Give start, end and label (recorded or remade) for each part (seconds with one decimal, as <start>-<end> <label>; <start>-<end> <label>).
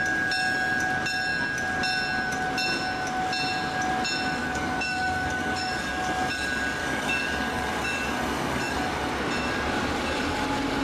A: 0.0-4.4 recorded; 4.4-5.9 remade; 5.9-6.8 recorded; 6.8-9.1 remade; 9.1-10.8 recorded